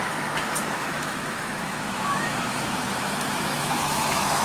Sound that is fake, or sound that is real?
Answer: fake